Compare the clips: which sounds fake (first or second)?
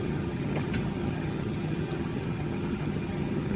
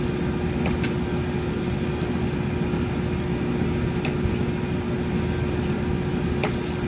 first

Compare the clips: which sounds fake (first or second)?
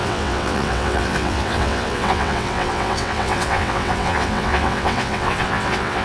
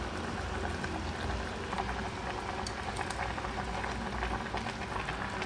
first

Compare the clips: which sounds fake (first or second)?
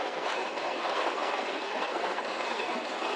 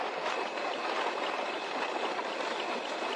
first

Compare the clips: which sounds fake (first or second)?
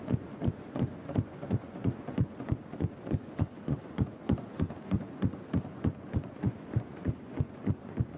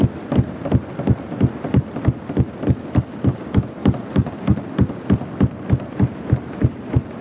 first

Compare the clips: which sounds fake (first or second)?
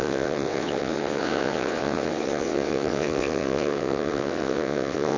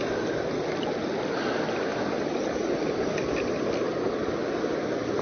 first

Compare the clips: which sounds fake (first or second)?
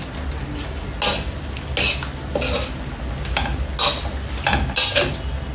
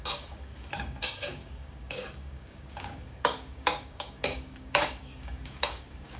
second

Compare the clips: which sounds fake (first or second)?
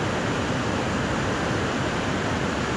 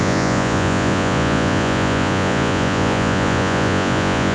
second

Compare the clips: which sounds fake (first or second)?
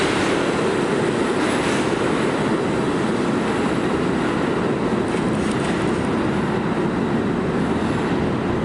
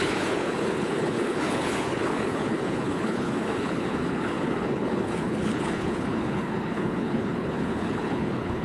second